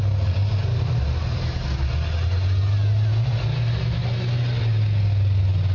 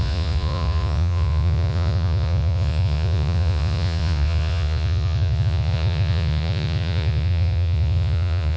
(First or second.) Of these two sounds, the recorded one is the first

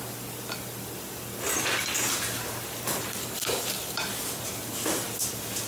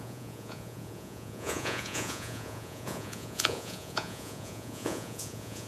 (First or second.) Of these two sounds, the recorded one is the first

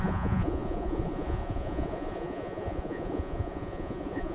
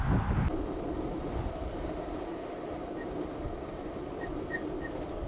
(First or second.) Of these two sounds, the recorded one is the second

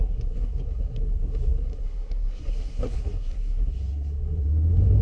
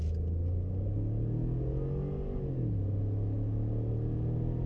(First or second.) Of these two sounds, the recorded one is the second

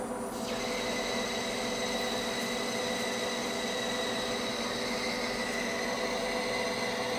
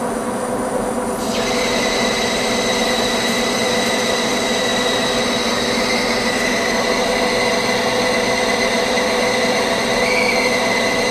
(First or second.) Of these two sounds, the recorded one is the first